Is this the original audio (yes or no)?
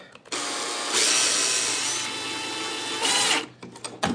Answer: yes